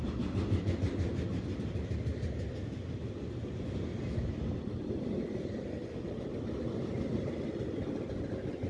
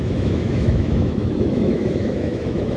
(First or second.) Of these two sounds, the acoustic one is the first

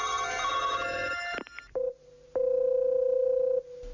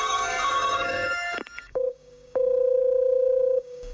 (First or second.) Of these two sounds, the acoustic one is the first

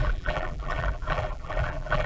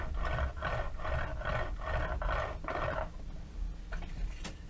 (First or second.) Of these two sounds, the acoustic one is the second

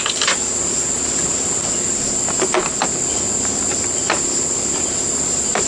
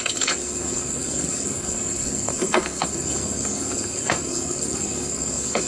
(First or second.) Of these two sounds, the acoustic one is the first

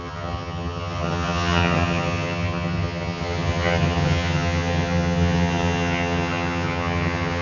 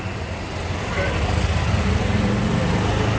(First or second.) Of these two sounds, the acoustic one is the second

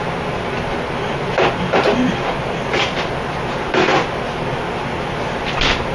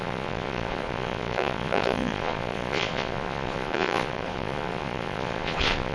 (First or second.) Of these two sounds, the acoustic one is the first